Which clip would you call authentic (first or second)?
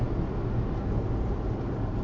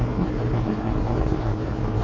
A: first